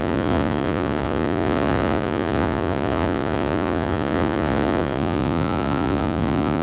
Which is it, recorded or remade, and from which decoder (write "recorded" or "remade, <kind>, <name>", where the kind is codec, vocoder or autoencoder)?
remade, vocoder, Vocos